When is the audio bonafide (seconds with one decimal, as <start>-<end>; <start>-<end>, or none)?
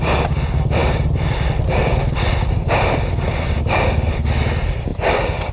0.0-0.8; 3.6-4.9